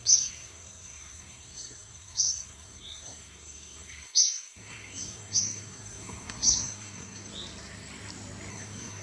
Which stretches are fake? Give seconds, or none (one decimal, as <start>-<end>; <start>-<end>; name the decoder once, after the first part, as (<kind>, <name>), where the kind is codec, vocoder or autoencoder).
0.0-7.3 (codec, SNAC); 8.5-9.0